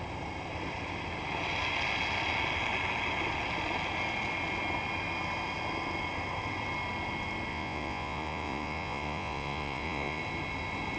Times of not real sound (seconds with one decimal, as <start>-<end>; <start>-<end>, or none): 7.5-10.2